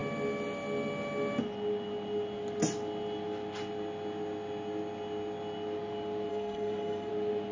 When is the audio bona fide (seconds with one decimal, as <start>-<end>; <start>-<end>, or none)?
0.0-6.3; 7.1-7.5